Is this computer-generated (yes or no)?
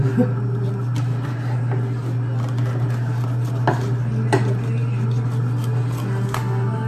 no